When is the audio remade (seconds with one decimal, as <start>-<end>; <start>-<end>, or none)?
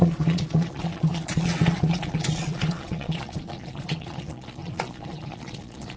0.0-6.0